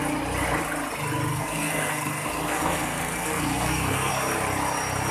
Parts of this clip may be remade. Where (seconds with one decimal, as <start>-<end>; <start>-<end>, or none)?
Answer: 1.3-4.1